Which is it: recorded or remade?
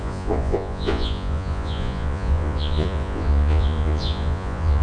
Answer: remade